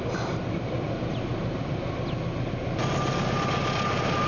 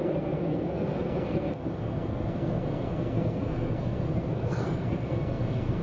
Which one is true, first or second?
first